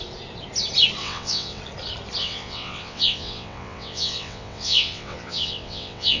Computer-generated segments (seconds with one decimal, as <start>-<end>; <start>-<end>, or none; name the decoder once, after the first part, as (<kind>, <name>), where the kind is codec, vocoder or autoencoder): 1.0-1.6 (vocoder, WaveNeXt); 2.2-6.2